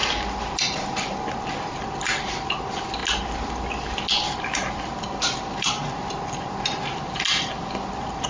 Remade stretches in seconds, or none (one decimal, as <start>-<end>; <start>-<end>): none